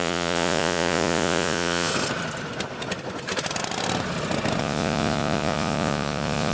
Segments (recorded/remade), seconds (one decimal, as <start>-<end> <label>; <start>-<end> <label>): 0.0-1.9 remade; 1.9-4.6 recorded; 4.6-6.5 remade